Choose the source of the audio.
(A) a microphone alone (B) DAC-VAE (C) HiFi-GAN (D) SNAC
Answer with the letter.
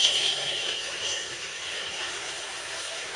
D